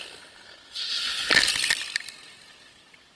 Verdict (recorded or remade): recorded